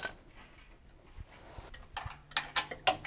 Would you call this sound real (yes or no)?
yes